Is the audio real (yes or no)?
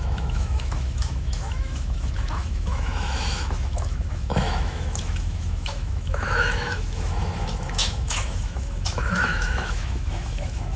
no